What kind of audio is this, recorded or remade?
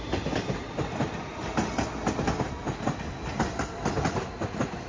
recorded